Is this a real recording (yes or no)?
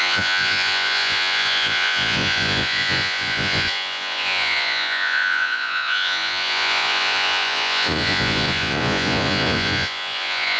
no